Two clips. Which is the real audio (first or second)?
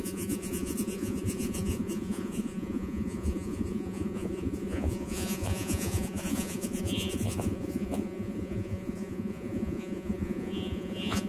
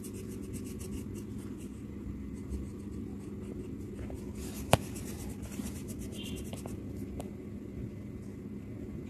second